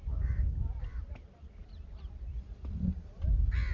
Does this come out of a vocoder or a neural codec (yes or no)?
no